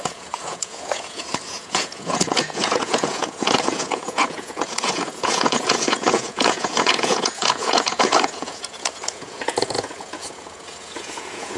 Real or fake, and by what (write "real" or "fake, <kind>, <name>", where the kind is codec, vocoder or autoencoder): fake, vocoder, Vocos